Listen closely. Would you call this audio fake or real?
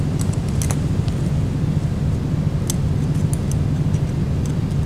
real